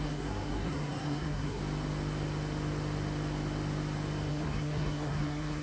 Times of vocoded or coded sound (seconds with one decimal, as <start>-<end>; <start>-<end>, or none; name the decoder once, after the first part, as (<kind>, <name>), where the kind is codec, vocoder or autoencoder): 0.0-1.6 (codec, SNAC); 4.3-5.6